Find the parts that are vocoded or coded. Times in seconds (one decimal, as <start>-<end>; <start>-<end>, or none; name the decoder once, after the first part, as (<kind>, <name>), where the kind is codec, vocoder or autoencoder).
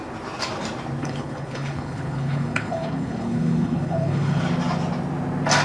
1.0-4.4 (codec, HILCodec)